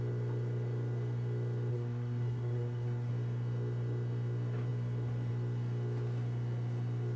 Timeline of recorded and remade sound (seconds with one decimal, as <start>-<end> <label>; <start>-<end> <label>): 0.0-1.7 recorded; 1.7-3.1 remade; 3.1-7.2 recorded